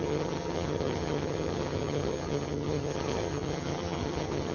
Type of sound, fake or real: fake